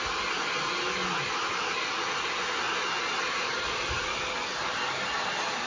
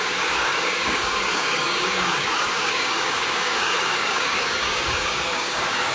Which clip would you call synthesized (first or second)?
second